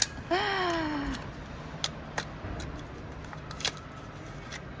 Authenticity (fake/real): real